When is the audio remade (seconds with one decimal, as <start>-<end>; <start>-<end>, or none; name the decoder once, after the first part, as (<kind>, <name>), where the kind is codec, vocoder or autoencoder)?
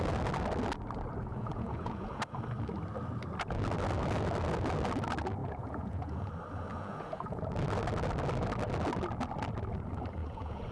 1.3-2.2 (vocoder, Vocos); 5.4-6.3; 6.7-7.4; 10.2-10.7